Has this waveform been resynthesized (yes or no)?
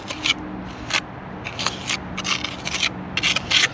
no